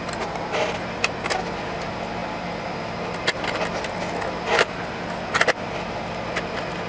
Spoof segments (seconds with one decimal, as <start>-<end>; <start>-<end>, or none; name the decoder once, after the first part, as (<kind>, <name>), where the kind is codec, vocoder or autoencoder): none